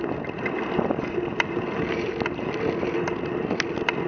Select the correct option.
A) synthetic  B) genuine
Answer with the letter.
B